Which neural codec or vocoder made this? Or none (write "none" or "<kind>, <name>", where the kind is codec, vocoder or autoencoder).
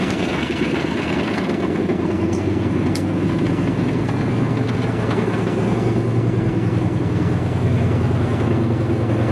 codec, SNAC